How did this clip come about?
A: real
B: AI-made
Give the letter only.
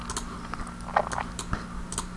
A